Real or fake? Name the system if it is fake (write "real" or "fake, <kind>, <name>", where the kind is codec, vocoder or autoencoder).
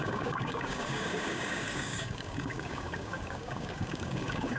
fake, codec, DAC